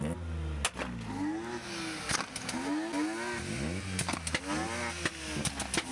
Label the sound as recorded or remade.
recorded